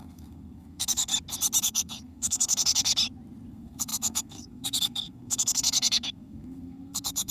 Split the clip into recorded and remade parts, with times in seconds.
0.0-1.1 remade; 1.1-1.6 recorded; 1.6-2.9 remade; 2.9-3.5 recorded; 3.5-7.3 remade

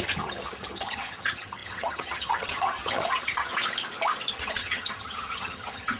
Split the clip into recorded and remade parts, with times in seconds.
0.0-3.5 remade; 3.5-4.3 recorded; 4.3-6.0 remade

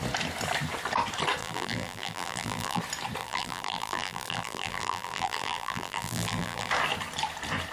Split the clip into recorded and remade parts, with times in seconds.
0.0-1.4 recorded; 1.4-2.8 remade; 2.8-3.2 recorded; 3.2-6.7 remade; 6.7-7.7 recorded